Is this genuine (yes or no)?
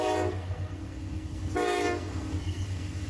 no